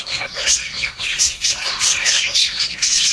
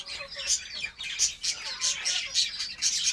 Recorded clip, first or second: second